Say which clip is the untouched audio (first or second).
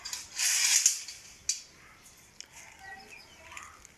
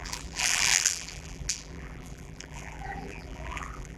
first